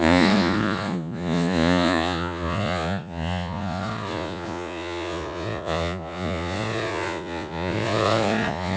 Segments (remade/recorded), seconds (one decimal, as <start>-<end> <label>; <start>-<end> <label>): 0.0-8.8 remade